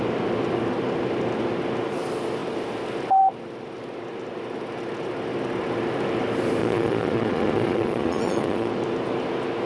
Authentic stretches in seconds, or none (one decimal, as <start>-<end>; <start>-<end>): 0.0-6.6; 8.7-9.7